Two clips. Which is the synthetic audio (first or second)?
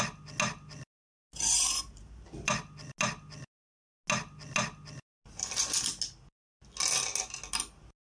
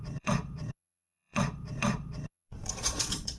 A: second